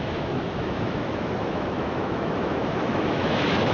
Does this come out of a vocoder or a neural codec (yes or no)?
yes